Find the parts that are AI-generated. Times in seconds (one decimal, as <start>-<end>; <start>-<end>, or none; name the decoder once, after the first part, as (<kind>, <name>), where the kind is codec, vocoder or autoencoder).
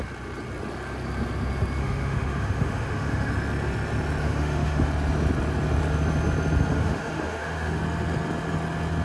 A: 1.8-3.3 (autoencoder, DAC-VAE); 4.2-4.9; 6.7-7.8